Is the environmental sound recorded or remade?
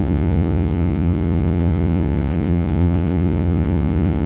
remade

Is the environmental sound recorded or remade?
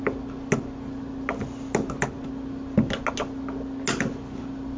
recorded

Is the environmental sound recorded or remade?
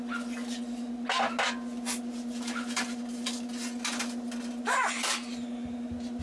recorded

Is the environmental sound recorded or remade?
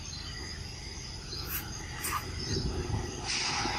recorded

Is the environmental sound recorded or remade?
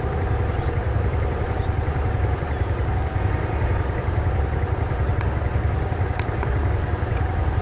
remade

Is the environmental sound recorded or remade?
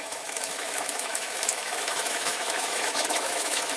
remade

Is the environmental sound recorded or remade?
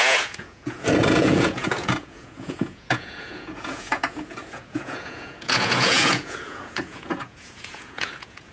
remade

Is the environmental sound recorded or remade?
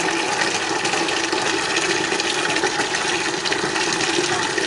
recorded